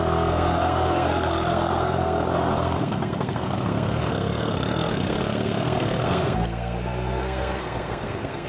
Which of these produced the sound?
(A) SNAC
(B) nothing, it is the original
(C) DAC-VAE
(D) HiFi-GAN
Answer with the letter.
A